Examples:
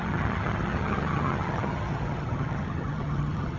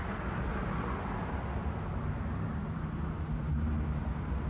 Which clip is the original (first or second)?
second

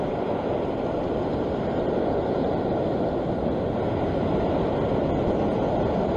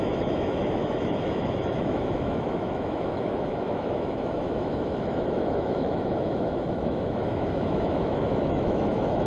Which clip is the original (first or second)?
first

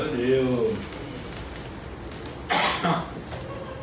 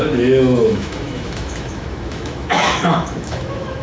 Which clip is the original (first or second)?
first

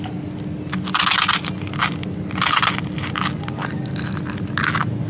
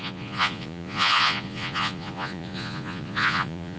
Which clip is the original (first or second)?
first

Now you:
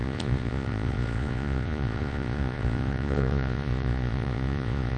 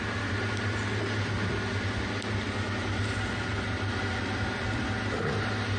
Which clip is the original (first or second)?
second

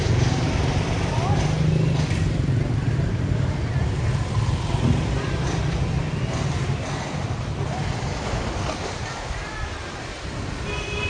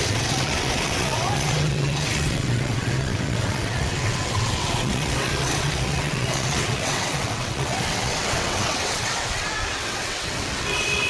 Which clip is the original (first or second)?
first